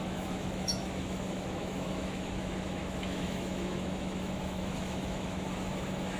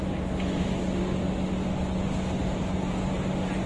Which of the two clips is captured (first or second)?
second